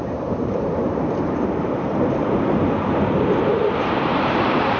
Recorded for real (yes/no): no